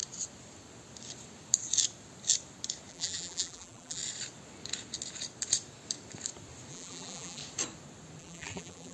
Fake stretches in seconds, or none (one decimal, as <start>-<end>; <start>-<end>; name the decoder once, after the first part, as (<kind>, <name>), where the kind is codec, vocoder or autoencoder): 2.9-4.0 (vocoder, BigVGAN v2); 6.7-7.4; 8.2-8.9